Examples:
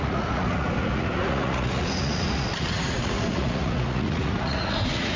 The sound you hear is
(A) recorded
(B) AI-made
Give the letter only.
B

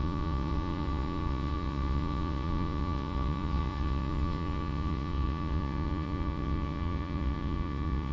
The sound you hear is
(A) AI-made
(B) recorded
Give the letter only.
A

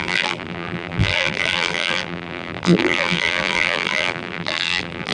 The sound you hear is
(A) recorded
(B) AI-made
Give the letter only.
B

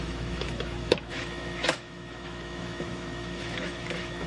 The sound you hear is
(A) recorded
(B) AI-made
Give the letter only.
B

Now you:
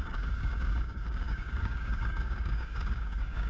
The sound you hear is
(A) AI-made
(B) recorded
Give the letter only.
A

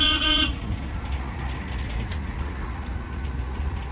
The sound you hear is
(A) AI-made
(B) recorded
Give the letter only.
A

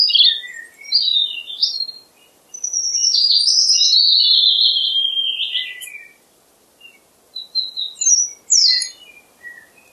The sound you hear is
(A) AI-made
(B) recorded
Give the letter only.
B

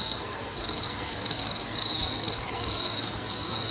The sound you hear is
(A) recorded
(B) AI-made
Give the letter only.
B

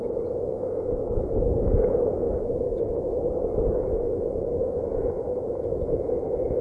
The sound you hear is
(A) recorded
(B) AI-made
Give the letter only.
B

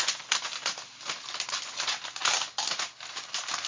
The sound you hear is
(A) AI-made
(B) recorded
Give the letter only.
B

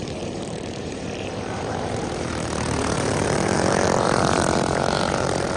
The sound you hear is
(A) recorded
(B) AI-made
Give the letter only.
B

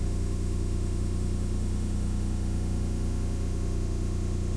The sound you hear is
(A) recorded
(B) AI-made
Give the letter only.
B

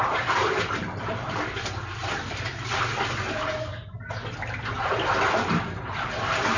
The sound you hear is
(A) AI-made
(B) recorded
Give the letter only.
B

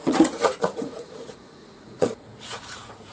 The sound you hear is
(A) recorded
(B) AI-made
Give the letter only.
B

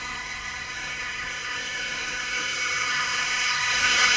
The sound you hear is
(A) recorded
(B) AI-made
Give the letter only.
B